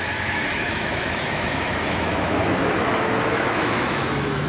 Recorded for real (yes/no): no